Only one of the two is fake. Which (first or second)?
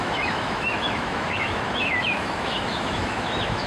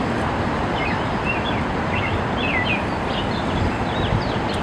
first